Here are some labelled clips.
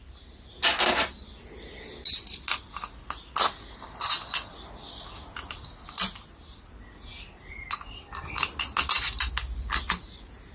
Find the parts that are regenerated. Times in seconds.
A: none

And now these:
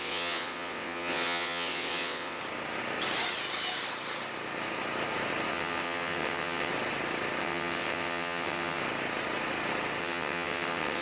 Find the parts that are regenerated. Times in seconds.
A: 0.0-2.4 (vocoder, WaveNeXt); 5.5-6.7; 7.4-8.8; 10.0-11.0

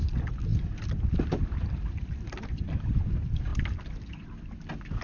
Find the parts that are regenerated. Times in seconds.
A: none

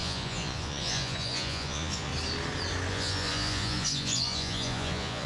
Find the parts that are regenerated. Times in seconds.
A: 0.0-2.1 (vocoder, Vocos); 2.9-5.3

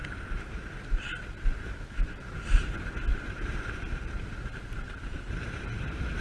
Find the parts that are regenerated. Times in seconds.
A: 0.0-1.4 (vocoder, BigVGAN v2)

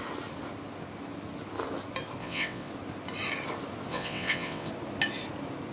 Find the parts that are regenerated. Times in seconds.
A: 2.2-2.7 (vocoder, WaveNeXt); 3.9-4.7